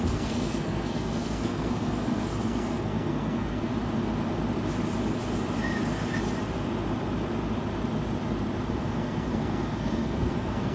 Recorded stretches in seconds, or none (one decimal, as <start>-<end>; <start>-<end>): 3.7-8.7